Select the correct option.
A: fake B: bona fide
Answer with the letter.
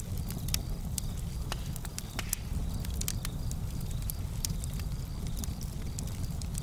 B